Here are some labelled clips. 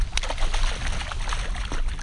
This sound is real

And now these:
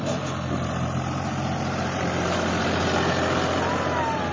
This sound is real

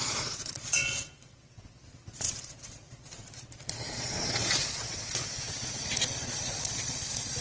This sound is fake